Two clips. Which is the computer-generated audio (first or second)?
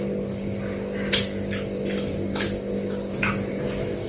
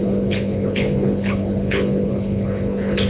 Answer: second